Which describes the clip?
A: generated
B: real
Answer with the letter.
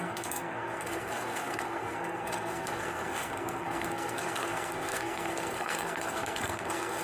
A